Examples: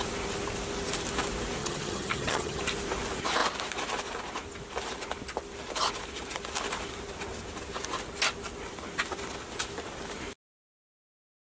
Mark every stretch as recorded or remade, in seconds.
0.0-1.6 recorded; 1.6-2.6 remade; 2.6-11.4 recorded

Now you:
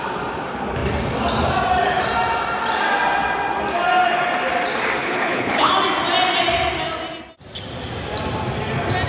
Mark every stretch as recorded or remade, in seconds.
0.0-5.0 recorded; 5.0-5.7 remade; 5.7-9.1 recorded

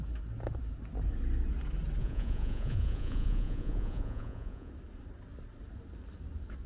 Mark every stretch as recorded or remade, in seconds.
0.0-2.0 recorded; 2.0-4.7 remade; 4.7-6.7 recorded

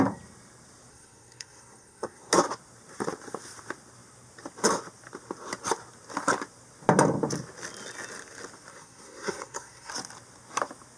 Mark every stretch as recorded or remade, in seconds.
0.0-0.9 recorded; 0.9-2.3 remade; 2.3-8.7 recorded; 8.7-9.9 remade; 9.9-11.0 recorded

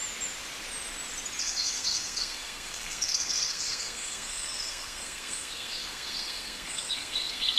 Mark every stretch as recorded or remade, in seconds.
0.0-1.4 recorded; 1.4-7.6 remade

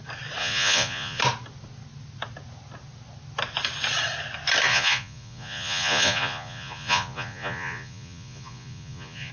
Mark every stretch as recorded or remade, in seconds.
0.0-0.4 recorded; 0.4-1.2 remade; 1.2-4.7 recorded; 4.7-9.3 remade

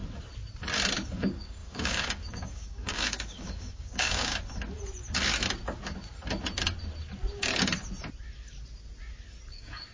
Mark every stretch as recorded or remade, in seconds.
0.0-1.1 recorded; 1.1-4.3 remade; 4.3-9.5 recorded; 9.5-9.9 remade